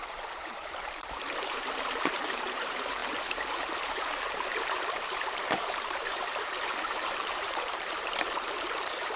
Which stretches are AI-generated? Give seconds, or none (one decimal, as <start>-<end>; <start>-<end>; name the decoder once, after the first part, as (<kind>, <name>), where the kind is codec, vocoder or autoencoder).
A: 0.0-9.2 (vocoder, BigVGAN v2)